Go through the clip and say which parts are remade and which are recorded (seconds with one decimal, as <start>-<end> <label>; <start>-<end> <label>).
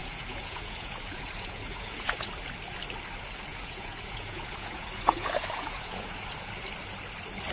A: 0.0-2.3 remade; 2.3-3.5 recorded; 3.5-6.5 remade; 6.5-7.5 recorded